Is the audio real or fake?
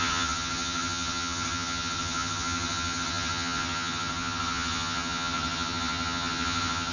fake